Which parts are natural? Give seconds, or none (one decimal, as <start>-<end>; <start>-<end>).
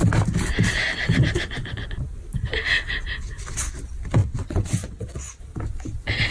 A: 0.0-4.2; 5.4-6.3